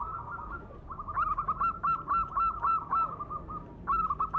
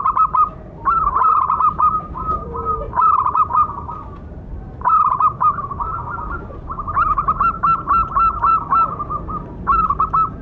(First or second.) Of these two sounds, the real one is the first